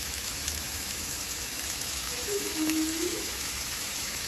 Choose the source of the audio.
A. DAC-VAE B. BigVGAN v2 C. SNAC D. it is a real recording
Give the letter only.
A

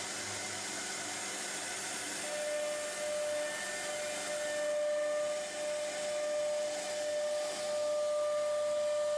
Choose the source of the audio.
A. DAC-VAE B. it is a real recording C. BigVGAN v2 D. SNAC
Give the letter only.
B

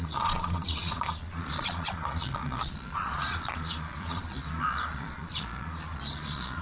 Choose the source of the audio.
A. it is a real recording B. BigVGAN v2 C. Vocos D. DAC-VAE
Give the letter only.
C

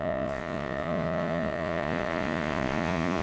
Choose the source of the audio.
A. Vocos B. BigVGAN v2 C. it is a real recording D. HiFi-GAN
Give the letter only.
A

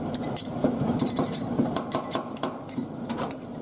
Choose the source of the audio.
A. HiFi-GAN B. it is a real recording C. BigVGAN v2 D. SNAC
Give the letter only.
C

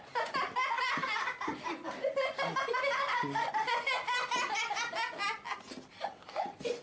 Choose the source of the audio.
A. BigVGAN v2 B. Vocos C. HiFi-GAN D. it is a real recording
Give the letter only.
D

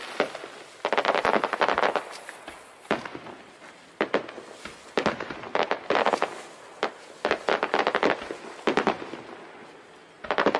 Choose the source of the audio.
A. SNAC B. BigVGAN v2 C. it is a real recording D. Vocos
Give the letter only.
C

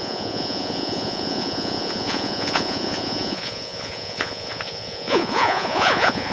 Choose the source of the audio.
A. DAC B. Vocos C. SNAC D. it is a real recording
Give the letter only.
B